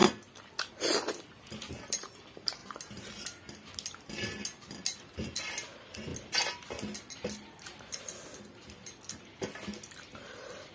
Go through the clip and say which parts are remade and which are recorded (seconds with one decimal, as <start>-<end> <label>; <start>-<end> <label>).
0.0-10.7 recorded